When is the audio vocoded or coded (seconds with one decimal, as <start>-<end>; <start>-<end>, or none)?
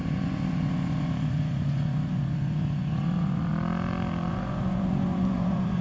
0.0-3.5; 4.3-5.8